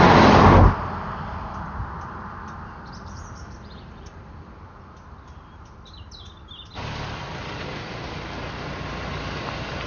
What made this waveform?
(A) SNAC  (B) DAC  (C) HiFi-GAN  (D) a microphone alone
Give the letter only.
D